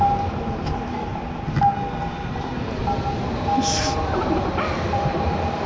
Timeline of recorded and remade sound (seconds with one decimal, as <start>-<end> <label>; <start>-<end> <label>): 0.0-5.7 recorded

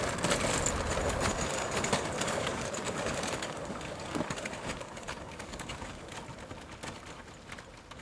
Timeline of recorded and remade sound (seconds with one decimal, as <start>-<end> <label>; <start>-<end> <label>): 0.0-1.3 recorded; 1.3-6.1 remade; 6.1-8.0 recorded

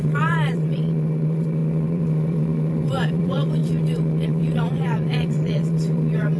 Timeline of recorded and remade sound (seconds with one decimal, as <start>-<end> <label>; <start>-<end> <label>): 0.0-6.4 remade